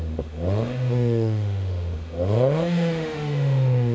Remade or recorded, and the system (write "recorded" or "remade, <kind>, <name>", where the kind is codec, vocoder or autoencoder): remade, autoencoder, DAC-VAE